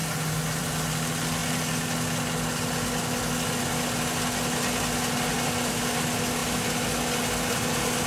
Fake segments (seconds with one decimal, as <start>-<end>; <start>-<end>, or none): none